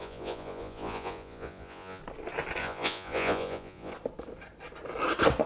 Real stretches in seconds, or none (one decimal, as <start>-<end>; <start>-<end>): 2.0-2.6; 3.9-5.5